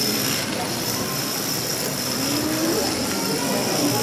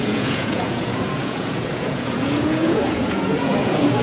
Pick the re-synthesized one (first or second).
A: second